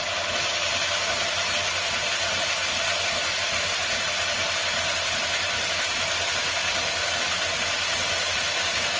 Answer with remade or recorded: recorded